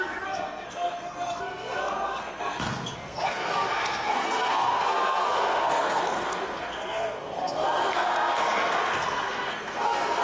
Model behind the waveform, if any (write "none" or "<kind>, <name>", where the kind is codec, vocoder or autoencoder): codec, SNAC